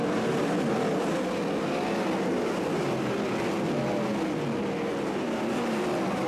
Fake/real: real